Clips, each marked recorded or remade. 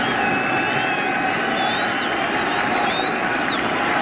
recorded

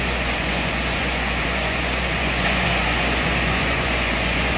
remade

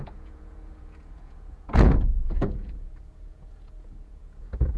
remade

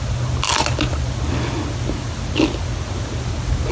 recorded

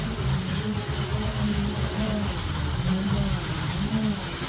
recorded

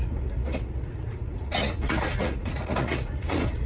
remade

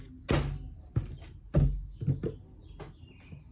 recorded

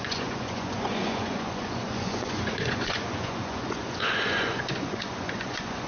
remade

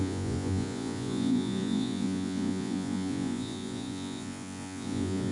remade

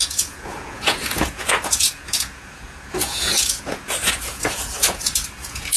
remade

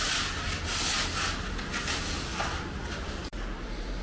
recorded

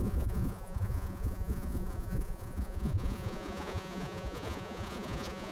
remade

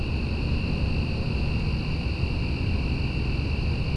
recorded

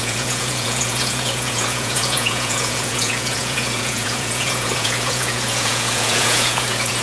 remade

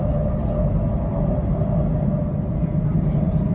recorded